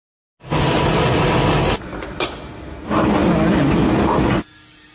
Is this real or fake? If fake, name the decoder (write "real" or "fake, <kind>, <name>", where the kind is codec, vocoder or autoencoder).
real